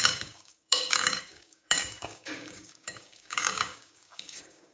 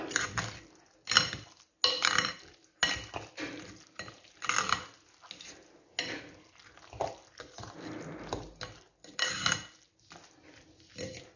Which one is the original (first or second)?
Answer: second